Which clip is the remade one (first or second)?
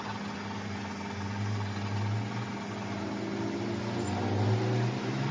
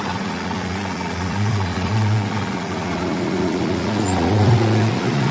second